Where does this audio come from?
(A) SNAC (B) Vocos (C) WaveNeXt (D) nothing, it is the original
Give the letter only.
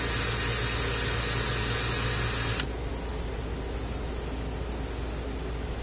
D